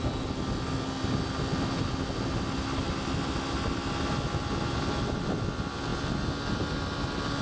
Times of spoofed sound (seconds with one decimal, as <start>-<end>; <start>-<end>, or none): none